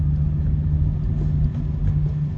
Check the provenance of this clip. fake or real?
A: real